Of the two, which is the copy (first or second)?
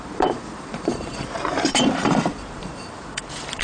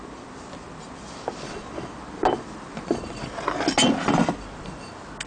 first